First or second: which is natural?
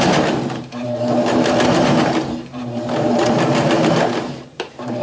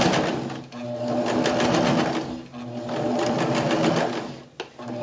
second